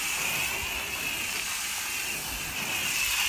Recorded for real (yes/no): yes